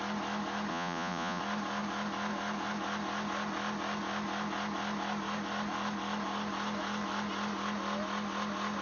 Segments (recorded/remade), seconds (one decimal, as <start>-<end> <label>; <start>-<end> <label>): 0.0-0.7 recorded; 0.7-1.4 remade; 1.4-8.8 recorded